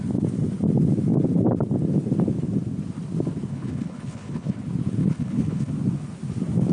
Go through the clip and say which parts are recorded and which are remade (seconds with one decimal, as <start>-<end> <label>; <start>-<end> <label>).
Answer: 0.0-3.5 recorded; 3.5-4.6 remade; 4.6-5.0 recorded; 5.0-5.7 remade; 5.7-6.7 recorded